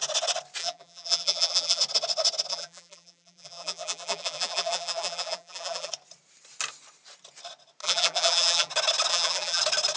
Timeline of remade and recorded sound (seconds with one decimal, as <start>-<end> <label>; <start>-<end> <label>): 0.0-0.6 recorded; 0.6-1.8 remade; 1.8-2.5 recorded; 2.5-5.9 remade; 5.9-7.8 recorded; 7.8-8.7 remade; 8.7-9.1 recorded; 9.1-9.6 remade; 9.6-10.0 recorded